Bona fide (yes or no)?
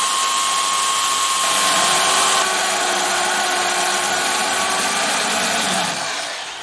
yes